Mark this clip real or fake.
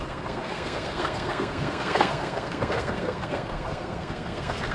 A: fake